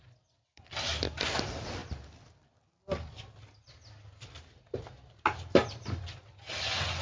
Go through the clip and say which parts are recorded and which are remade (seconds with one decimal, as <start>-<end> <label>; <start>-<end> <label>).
0.0-7.0 recorded